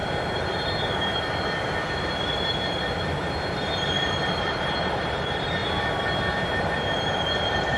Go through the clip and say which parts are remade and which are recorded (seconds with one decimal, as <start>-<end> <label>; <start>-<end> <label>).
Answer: 0.0-4.4 recorded; 4.4-5.6 remade; 5.6-6.6 recorded; 6.6-7.8 remade